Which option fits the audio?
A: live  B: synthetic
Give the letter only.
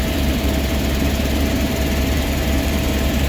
B